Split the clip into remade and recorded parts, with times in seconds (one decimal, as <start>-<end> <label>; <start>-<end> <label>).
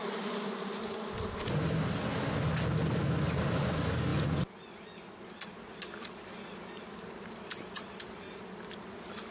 0.0-9.3 recorded